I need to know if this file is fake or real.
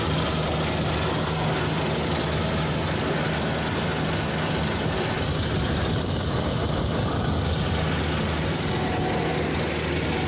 real